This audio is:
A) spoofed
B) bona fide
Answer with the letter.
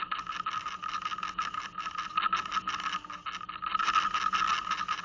B